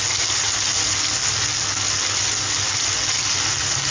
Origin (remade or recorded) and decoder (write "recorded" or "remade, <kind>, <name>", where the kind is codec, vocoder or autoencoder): recorded